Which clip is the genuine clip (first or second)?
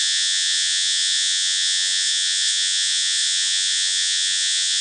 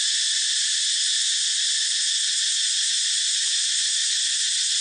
second